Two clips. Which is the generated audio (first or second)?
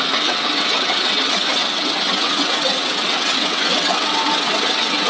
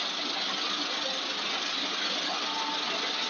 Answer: first